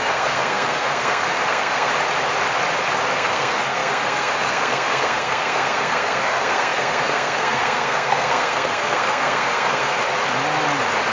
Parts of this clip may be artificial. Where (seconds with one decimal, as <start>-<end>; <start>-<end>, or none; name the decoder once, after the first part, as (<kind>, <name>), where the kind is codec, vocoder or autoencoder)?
0.0-1.9 (codec, SNAC); 3.1-10.0